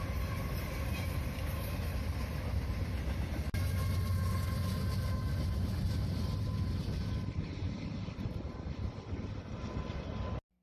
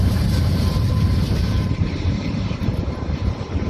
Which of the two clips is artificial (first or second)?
second